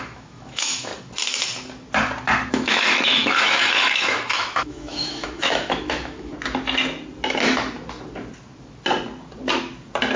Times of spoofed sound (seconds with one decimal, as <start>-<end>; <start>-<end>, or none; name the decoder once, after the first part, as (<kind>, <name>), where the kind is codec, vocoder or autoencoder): 0.0-0.9 (autoencoder, DAC-VAE); 2.5-6.3